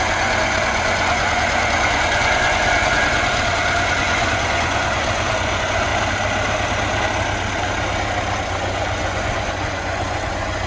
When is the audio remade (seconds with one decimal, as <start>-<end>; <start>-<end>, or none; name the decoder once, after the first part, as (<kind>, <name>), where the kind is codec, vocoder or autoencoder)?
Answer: 0.0-5.9 (vocoder, Vocos); 8.5-10.7